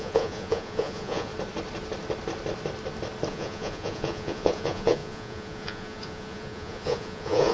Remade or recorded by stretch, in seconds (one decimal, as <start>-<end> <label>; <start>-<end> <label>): 0.0-1.3 remade; 1.3-3.3 recorded; 3.3-7.5 remade